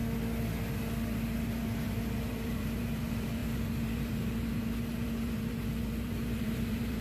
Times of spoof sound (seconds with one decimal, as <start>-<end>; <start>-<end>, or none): 1.8-7.0